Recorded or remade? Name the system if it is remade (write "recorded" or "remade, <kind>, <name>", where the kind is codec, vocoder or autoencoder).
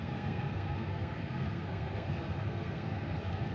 remade, codec, SNAC